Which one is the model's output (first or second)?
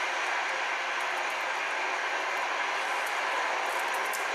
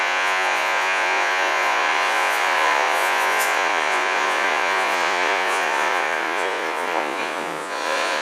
second